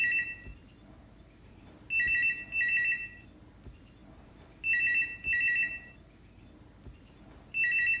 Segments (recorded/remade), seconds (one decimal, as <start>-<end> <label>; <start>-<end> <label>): 0.0-8.0 recorded